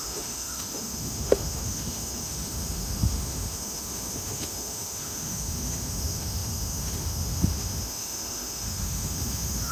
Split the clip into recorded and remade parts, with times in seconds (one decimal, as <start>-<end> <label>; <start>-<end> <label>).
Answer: 0.0-9.7 remade